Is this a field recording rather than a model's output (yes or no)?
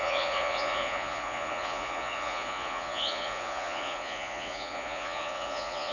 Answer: no